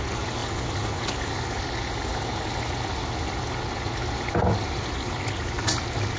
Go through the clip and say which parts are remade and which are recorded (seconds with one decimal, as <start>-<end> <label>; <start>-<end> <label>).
0.0-6.2 recorded